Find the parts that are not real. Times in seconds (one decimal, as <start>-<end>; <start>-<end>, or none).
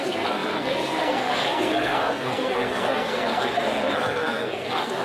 0.0-5.0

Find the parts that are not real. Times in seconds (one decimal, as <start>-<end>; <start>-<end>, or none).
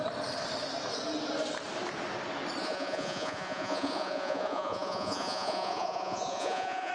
2.6-6.9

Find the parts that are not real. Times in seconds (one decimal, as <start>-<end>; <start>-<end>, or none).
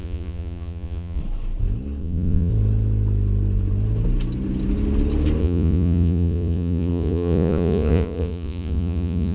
0.0-1.2; 2.0-2.5; 5.4-9.3